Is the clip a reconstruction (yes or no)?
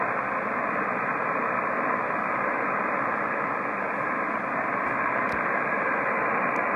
no